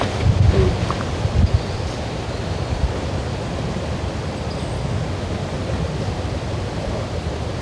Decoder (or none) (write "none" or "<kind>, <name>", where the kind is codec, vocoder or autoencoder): none